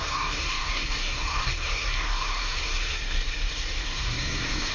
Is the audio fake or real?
fake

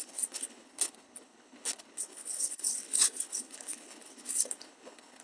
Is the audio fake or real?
fake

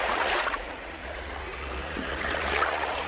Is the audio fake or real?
fake